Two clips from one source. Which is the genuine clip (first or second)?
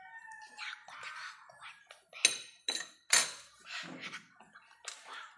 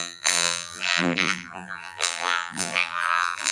first